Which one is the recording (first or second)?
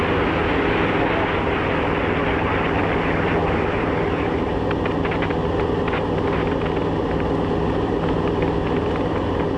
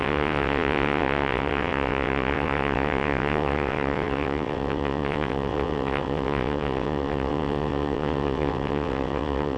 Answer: first